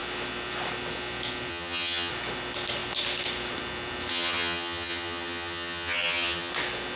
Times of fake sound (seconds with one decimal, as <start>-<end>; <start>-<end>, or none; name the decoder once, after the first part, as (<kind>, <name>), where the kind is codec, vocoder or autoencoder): 1.5-2.1 (vocoder, HiFi-GAN); 4.1-6.5